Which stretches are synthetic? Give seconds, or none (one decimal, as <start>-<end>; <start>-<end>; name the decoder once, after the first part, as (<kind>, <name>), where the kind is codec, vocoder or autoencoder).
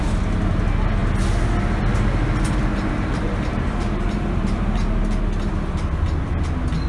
2.7-5.0 (vocoder, BigVGAN v2)